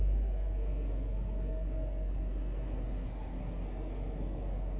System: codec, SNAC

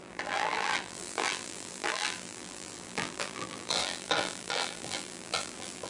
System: vocoder, BigVGAN v2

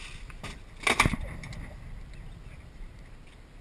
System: none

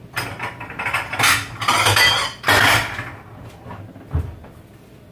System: none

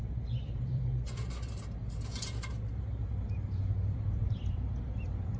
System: vocoder, BigVGAN v2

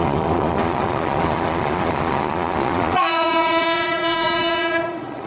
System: vocoder, Vocos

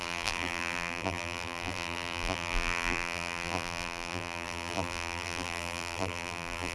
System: vocoder, BigVGAN v2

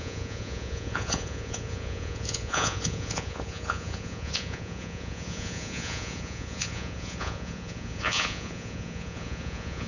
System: vocoder, Vocos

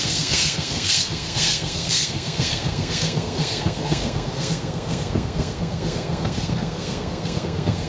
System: codec, SNAC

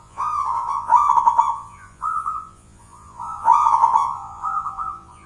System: vocoder, Vocos